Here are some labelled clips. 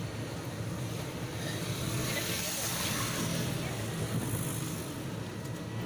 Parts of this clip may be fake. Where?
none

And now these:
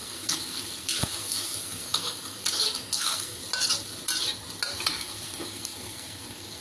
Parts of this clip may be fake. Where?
0.0-3.4 (codec, SNAC); 4.9-6.6

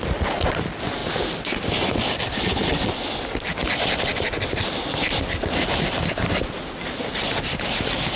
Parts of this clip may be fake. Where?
none

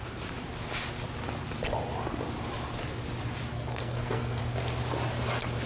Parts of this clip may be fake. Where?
3.5-4.4 (codec, SNAC)

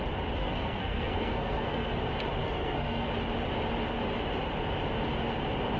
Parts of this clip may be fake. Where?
0.4-2.0 (codec, SNAC); 2.4-3.1

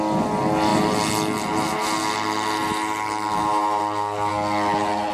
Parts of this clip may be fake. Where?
none

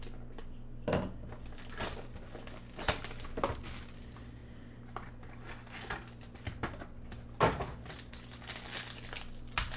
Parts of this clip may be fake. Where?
none

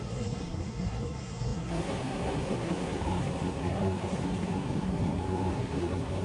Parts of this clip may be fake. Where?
0.0-6.2 (codec, SNAC)